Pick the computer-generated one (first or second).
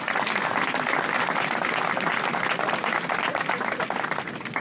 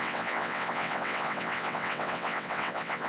second